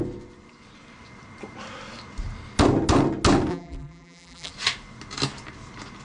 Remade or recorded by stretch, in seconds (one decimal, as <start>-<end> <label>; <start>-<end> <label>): 0.0-3.5 recorded; 3.5-4.5 remade; 4.5-6.0 recorded